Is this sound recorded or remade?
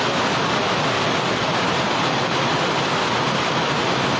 recorded